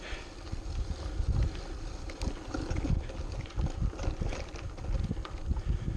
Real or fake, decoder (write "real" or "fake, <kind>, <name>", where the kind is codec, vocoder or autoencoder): real